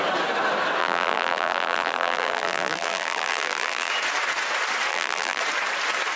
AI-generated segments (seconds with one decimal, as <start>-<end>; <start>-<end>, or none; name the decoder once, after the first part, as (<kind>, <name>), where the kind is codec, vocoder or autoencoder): 0.8-3.9 (vocoder, BigVGAN v2); 4.9-5.4